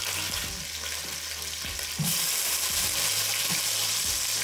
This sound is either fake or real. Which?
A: real